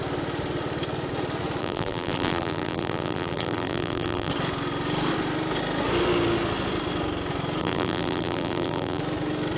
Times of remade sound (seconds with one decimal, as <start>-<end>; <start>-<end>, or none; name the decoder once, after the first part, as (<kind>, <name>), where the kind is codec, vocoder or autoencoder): 1.6-4.3 (vocoder, BigVGAN v2); 7.6-9.0